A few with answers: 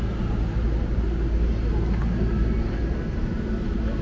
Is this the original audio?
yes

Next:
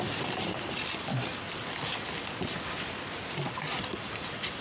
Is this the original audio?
yes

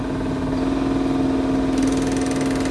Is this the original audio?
yes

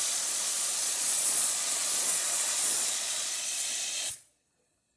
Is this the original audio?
no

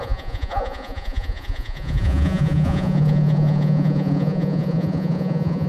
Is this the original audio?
no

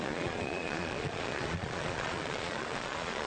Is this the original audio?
no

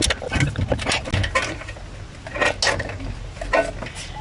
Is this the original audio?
yes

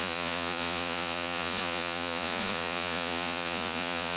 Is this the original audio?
no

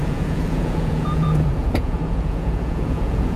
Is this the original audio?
no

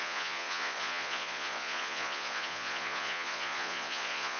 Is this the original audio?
no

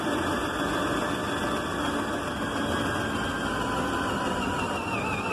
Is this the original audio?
yes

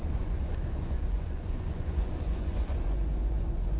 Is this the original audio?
no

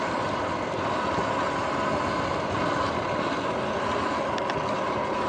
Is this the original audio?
yes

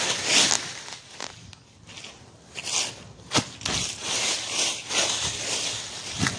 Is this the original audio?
yes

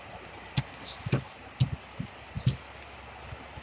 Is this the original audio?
yes